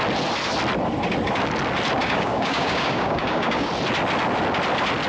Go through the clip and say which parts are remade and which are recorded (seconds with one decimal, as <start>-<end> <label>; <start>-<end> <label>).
0.0-2.0 recorded; 2.0-3.7 remade; 3.7-5.1 recorded